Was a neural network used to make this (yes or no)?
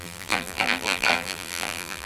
yes